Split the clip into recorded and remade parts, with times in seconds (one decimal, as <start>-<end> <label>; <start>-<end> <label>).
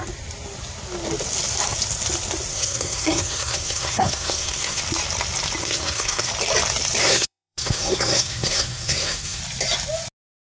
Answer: 0.0-2.5 recorded; 2.5-4.8 remade; 4.8-5.6 recorded; 5.6-6.3 remade; 6.3-7.0 recorded; 7.0-9.4 remade; 9.4-10.4 recorded